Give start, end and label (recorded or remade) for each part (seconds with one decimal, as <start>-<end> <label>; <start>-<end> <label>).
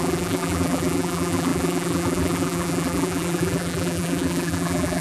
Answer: 0.0-5.0 remade